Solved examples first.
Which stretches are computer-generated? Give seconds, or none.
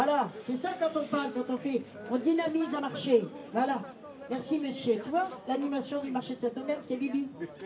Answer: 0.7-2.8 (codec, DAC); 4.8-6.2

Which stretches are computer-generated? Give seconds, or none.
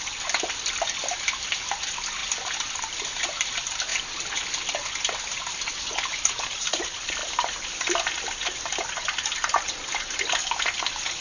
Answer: none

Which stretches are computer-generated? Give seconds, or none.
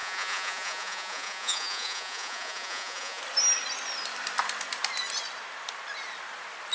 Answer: 0.0-3.2 (vocoder, Vocos)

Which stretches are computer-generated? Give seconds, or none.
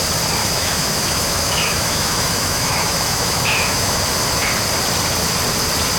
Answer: 0.4-4.0 (autoencoder, DAC-VAE)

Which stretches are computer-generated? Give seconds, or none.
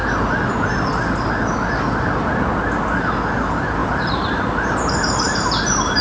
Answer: 3.8-6.0 (vocoder, BigVGAN v2)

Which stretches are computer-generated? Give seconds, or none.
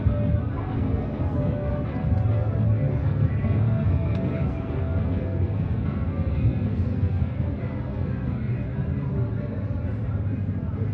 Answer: 0.4-1.7 (codec, SNAC); 3.0-7.5; 7.9-8.5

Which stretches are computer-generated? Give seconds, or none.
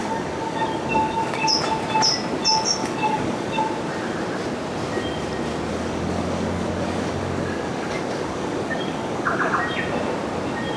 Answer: 0.0-1.5 (codec, DAC); 2.8-3.6; 5.7-9.6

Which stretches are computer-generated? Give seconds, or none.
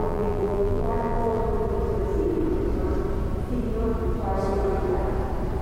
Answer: 0.0-1.4 (vocoder, BigVGAN v2)